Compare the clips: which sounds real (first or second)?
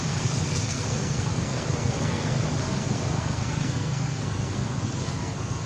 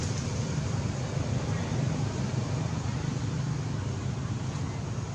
second